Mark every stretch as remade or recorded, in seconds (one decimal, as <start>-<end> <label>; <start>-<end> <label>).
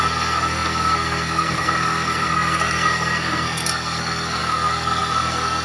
0.0-5.6 remade